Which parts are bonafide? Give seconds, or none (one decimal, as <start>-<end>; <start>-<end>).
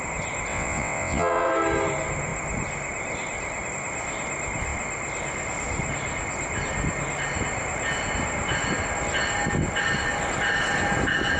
0.0-0.5; 1.5-11.4